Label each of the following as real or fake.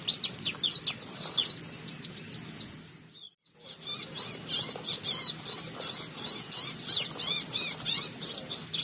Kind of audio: real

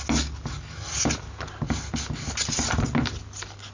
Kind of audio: real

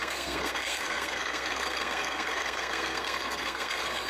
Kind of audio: fake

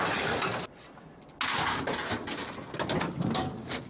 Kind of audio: real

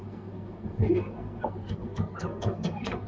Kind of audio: fake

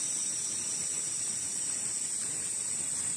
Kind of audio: real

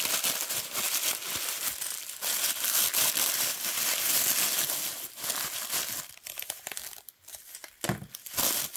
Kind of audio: real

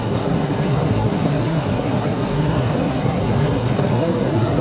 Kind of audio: fake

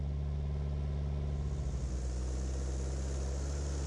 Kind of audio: real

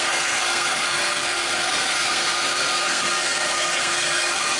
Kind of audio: fake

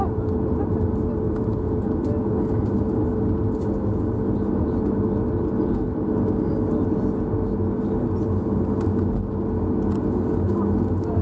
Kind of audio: real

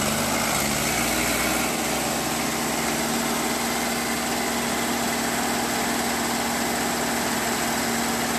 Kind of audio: real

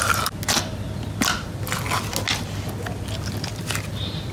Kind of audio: real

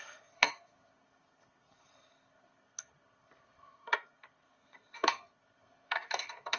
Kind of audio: fake